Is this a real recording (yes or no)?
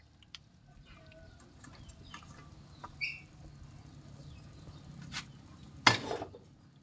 yes